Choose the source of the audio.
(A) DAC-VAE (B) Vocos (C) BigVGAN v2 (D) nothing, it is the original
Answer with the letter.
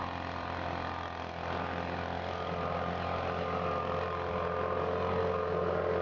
D